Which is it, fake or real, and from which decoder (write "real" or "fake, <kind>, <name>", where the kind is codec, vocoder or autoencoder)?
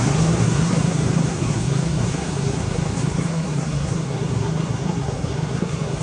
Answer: fake, codec, SNAC